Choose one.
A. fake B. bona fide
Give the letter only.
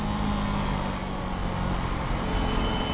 B